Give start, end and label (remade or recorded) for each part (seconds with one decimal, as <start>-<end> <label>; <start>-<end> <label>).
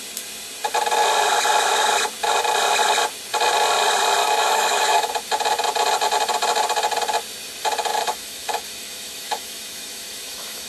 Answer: 0.0-4.2 recorded; 4.2-5.1 remade; 5.1-7.9 recorded; 7.9-10.7 remade